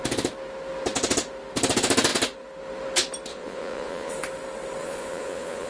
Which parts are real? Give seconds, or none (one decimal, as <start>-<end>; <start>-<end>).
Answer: 0.0-3.3; 4.1-4.8